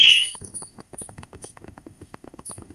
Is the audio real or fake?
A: fake